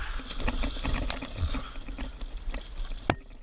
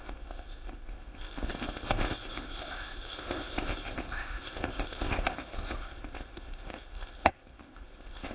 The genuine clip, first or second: first